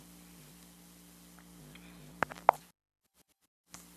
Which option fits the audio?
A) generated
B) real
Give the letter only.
B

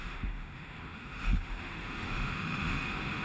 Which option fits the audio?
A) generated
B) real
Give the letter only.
A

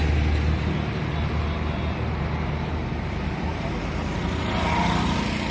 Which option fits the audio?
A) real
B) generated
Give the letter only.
A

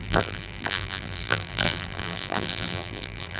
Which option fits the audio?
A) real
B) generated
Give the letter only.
B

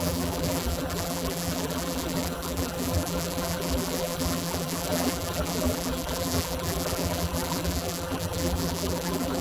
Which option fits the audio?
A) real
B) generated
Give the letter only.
B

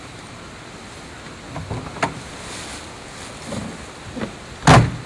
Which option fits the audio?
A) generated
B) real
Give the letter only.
B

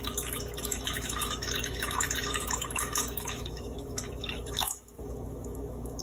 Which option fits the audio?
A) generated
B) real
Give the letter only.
A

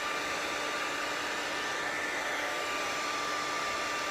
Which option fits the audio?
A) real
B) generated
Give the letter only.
A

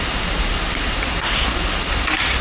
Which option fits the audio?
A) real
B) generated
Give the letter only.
A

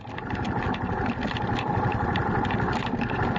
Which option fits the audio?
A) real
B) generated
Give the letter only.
B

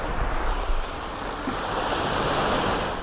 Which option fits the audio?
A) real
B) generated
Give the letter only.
A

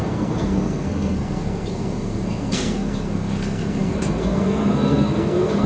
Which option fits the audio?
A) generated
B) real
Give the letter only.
A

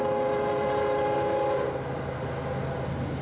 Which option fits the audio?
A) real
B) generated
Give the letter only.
A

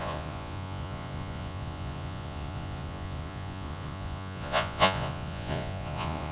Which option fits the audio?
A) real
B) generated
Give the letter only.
B